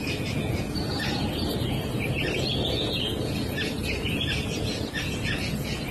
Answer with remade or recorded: remade